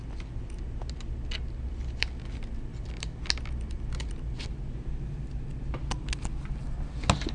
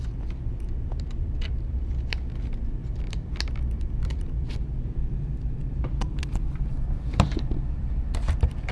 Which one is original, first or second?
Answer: first